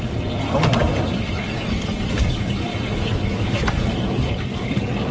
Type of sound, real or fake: real